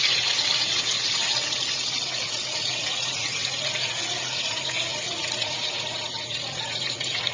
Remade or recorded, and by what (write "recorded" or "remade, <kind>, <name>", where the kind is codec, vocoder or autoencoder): remade, vocoder, Vocos